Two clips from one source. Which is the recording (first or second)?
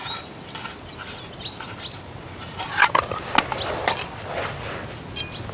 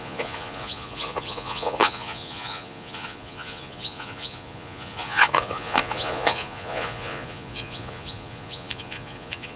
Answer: first